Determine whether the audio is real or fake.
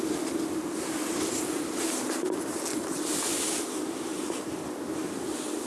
real